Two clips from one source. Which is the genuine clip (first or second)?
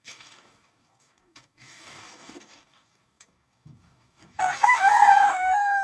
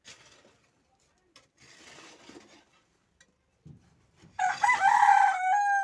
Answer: second